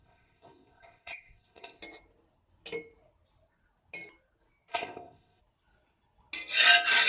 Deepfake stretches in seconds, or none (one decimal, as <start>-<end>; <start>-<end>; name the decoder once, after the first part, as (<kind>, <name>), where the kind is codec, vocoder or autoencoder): 0.0-1.8 (codec, ZipCodec); 4.7-5.4